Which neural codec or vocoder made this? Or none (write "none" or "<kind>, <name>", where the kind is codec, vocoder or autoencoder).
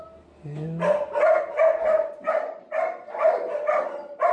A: none